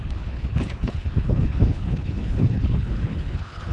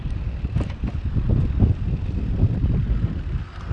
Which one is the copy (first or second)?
first